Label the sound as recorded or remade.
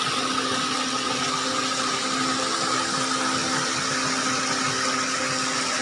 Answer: recorded